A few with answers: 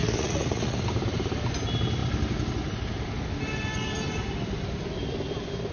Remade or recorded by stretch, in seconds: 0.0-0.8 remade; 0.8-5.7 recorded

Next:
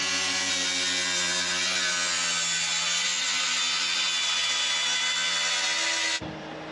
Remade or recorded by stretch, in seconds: 0.0-0.5 remade; 0.5-6.7 recorded

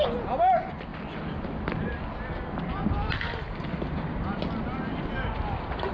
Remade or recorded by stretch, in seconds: 0.0-5.9 recorded

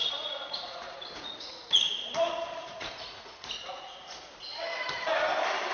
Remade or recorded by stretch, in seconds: 0.0-1.9 remade; 1.9-2.6 recorded; 2.6-4.3 remade; 4.3-5.7 recorded

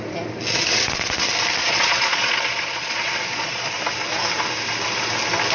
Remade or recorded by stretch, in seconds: 0.0-1.6 recorded; 1.6-3.8 remade; 3.8-5.5 recorded

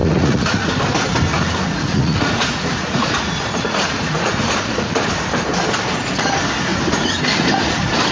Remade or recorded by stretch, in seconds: 0.0-0.7 remade; 0.7-1.3 recorded; 1.3-4.9 remade; 4.9-6.7 recorded; 6.7-7.2 remade; 7.2-8.1 recorded